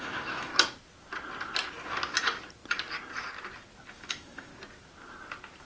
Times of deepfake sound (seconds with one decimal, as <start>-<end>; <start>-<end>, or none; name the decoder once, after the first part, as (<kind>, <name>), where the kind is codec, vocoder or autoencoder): 0.0-0.5 (autoencoder, DAC-VAE); 3.9-4.5